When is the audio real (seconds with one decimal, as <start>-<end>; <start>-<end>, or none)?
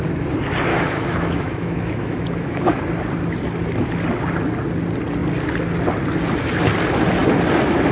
0.0-0.7; 2.8-7.9